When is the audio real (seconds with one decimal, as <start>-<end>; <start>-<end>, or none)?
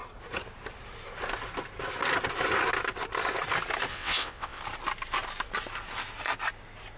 0.0-3.9; 4.6-7.0